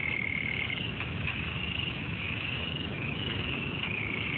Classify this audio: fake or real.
fake